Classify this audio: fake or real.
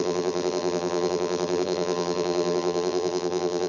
fake